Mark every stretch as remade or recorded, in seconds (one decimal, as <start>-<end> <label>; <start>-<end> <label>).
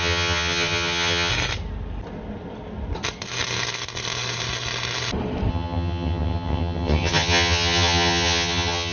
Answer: 0.0-1.3 remade; 1.3-5.5 recorded; 5.5-8.9 remade